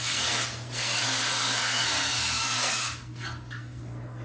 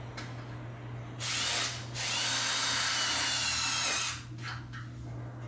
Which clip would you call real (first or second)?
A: second